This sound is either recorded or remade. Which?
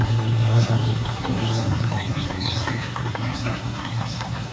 remade